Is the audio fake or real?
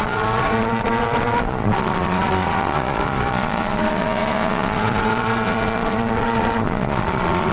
fake